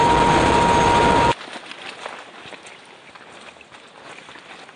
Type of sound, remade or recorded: recorded